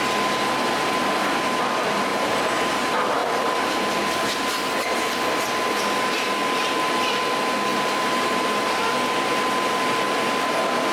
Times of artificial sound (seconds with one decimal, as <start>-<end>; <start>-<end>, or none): 2.1-2.7; 3.2-4.2; 7.7-8.6